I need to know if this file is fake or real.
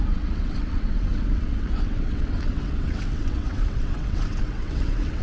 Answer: fake